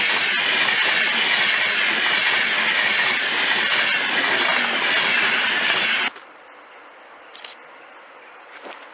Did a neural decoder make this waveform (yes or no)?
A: no